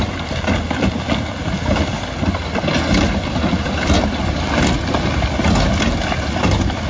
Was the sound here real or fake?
real